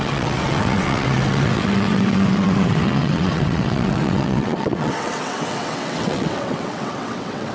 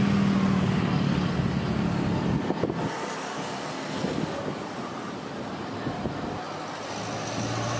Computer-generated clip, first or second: first